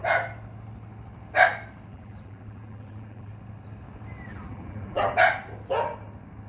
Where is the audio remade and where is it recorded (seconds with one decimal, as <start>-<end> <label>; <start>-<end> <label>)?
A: 0.0-1.9 recorded; 1.9-3.3 remade; 3.3-4.3 recorded; 4.3-5.1 remade; 5.1-6.5 recorded